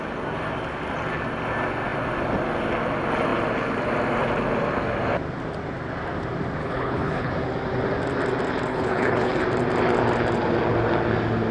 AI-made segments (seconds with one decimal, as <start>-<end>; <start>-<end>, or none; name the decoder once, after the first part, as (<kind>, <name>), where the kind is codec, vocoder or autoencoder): 6.6-7.3 (codec, HILCodec); 8.7-9.4